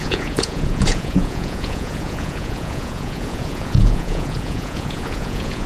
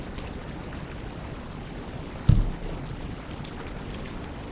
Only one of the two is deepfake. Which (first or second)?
first